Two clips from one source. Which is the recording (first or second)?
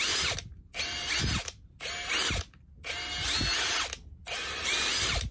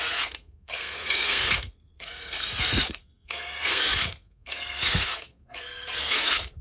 first